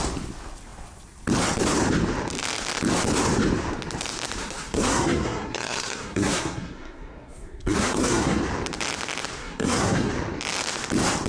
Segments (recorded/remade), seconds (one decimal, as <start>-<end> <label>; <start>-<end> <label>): 0.0-4.4 recorded; 4.4-8.4 remade; 8.4-9.4 recorded; 9.4-10.1 remade; 10.1-11.3 recorded